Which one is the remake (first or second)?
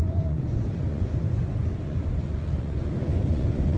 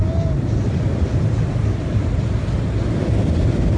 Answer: first